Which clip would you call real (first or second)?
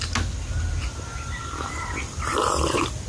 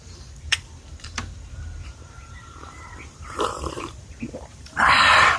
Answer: first